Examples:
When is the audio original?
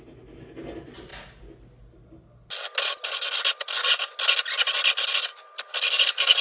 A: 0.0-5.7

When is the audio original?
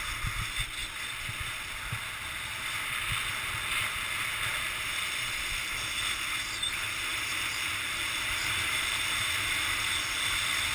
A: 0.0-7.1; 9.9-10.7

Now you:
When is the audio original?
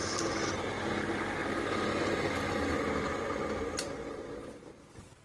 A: 0.0-5.2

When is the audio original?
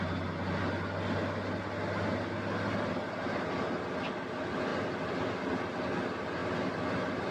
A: 0.0-4.7; 5.4-7.3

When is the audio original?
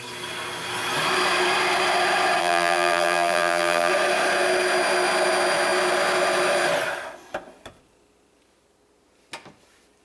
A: 0.0-2.4; 3.9-10.0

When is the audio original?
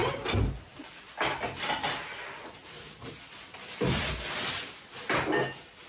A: 3.1-5.9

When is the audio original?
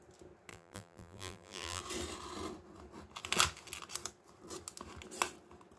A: 0.0-0.5; 1.8-5.8